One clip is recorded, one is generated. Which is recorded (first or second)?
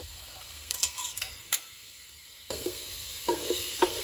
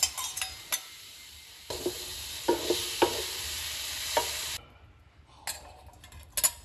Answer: second